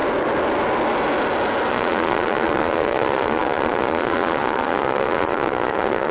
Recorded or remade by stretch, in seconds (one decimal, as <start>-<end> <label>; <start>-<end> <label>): 0.0-1.7 recorded; 1.7-6.1 remade